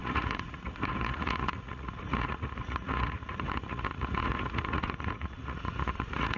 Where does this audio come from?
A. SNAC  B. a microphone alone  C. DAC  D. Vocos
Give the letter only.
D